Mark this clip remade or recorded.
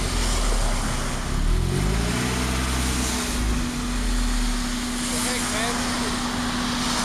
recorded